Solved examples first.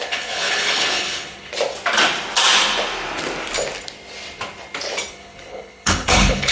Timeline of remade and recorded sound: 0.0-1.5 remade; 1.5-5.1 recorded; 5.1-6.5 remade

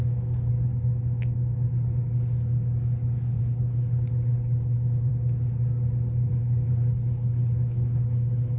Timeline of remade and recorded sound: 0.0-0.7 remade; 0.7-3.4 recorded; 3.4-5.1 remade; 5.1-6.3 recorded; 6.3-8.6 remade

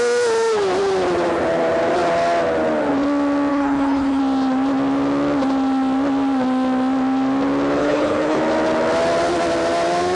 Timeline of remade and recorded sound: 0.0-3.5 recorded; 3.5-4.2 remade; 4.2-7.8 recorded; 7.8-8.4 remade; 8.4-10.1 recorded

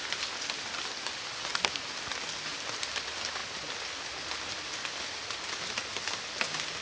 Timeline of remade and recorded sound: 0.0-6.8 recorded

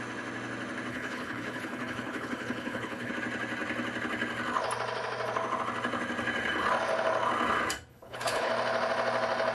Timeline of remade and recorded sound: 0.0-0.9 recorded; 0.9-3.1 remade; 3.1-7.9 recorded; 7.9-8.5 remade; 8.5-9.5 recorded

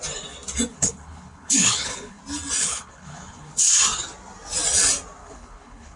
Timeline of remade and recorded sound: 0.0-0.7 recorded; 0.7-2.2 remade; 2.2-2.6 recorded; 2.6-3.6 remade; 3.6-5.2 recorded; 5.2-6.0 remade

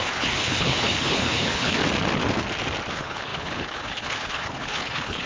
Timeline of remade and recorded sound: 0.0-1.8 remade; 1.8-2.9 recorded; 2.9-5.3 remade